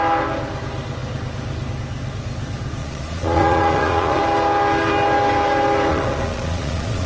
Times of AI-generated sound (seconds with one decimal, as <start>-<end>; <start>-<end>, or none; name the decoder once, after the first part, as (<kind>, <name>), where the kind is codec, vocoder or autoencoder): 2.8-4.2 (vocoder, Vocos); 5.9-7.1